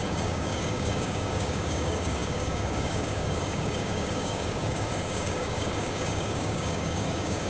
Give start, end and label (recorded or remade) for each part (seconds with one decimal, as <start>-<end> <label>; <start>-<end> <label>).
0.0-7.5 remade